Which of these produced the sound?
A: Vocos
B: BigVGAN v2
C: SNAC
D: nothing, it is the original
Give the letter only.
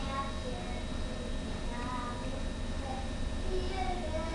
D